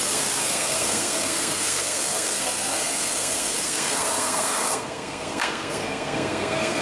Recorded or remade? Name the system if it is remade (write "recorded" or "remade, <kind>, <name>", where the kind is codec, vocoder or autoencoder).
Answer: remade, codec, SNAC